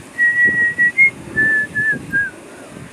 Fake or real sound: real